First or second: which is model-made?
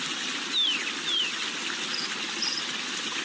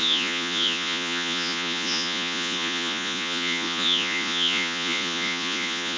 second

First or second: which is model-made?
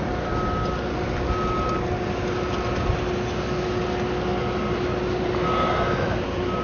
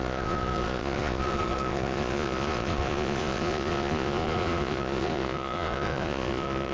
second